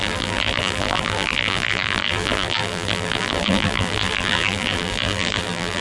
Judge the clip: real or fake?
fake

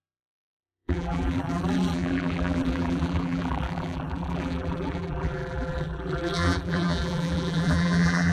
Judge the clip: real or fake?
fake